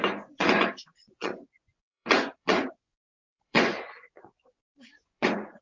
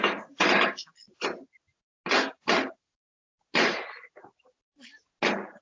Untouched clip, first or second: second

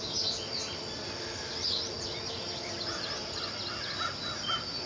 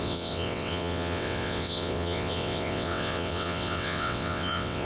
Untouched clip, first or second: first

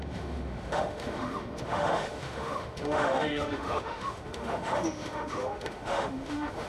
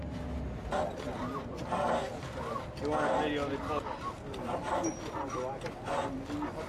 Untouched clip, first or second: second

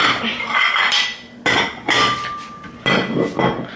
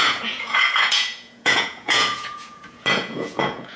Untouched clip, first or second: first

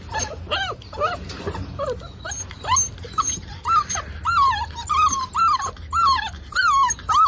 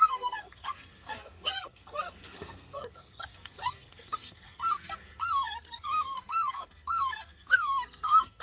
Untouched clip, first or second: first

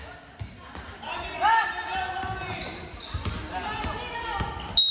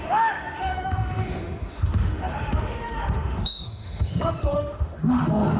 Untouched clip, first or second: first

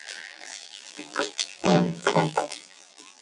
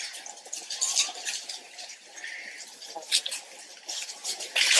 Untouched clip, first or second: second